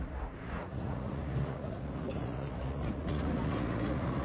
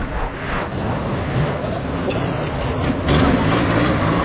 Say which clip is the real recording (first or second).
second